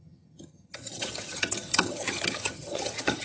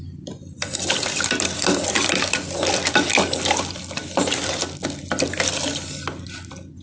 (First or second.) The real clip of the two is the second